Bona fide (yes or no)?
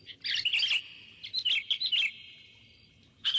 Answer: yes